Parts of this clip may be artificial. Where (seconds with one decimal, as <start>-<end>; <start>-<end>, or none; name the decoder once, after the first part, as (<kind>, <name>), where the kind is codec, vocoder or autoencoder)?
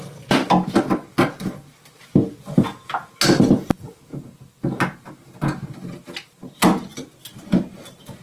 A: none